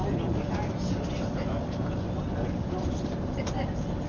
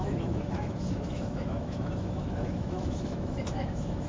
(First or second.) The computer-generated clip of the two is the second